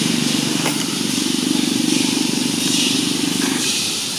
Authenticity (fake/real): fake